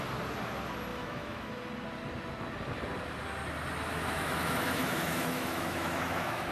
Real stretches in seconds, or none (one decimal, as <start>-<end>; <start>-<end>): 0.0-0.9; 1.5-3.9